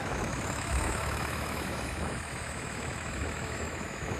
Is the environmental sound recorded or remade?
remade